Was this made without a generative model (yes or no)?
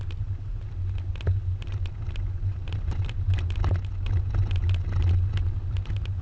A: yes